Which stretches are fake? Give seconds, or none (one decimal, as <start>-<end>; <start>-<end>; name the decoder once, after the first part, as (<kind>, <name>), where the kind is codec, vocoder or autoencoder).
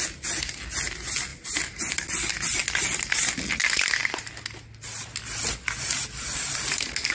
none